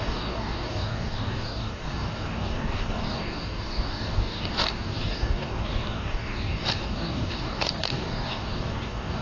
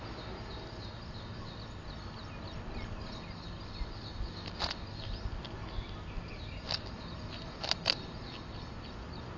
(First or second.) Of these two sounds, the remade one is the first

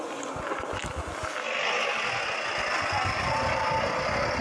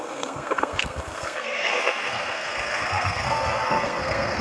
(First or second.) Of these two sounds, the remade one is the second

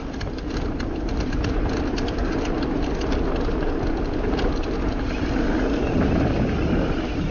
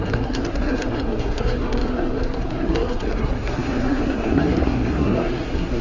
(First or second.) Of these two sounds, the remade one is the second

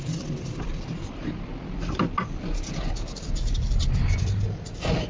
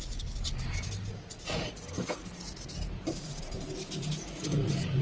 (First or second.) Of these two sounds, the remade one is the first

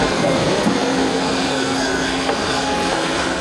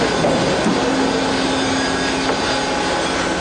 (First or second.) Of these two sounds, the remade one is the first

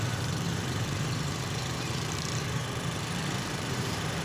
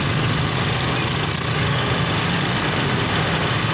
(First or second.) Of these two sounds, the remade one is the first